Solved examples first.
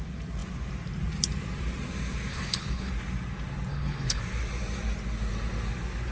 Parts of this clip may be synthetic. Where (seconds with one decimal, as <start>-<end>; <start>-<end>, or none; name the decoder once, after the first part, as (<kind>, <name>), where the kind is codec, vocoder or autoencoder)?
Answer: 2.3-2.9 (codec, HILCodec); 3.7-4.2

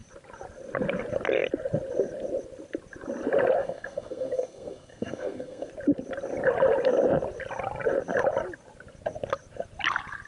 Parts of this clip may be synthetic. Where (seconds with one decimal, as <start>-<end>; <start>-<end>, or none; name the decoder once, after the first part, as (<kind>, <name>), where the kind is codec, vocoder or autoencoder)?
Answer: 3.6-5.7 (codec, SNAC)

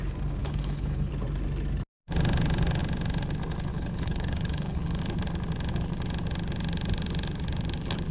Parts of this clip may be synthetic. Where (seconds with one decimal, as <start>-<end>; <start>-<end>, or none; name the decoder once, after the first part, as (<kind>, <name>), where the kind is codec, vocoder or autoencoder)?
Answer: 0.4-1.1 (codec, HILCodec); 3.7-5.0